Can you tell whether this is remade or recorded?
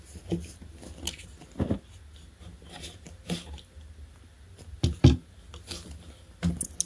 recorded